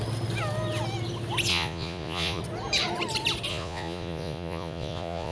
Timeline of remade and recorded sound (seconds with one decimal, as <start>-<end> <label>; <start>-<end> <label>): 0.0-1.5 recorded; 1.5-2.4 remade; 2.4-3.5 recorded; 3.5-5.3 remade